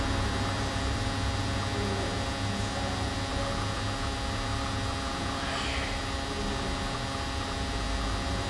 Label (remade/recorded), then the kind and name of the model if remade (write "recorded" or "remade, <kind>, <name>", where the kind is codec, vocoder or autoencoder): recorded